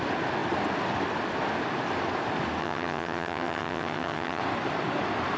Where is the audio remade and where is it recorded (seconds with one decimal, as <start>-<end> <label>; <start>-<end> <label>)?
0.0-2.6 recorded; 2.6-4.4 remade; 4.4-5.4 recorded